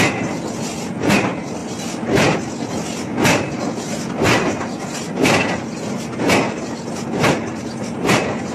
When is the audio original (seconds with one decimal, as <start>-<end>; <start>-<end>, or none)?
0.0-8.5